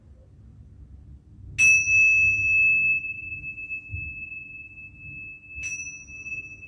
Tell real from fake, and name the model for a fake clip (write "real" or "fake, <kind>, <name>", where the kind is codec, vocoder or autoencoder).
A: real